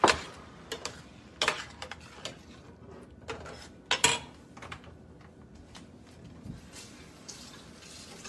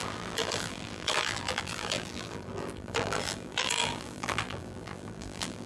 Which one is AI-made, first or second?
second